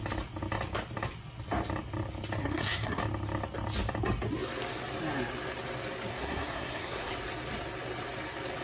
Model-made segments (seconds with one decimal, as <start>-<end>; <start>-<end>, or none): 2.4-3.0; 6.1-7.1